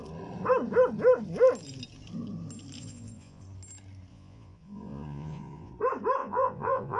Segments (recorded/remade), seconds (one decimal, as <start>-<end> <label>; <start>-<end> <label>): 0.0-2.8 recorded; 2.8-3.4 remade; 3.4-4.1 recorded; 4.1-5.7 remade; 5.7-6.2 recorded; 6.2-7.0 remade